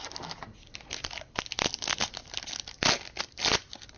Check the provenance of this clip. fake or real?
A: real